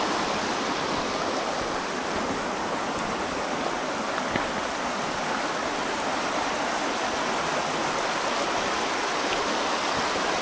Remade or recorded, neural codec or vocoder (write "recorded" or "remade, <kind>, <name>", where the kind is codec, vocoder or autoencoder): recorded